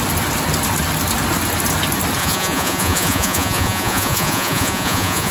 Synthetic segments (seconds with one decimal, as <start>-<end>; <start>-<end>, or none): 2.2-5.3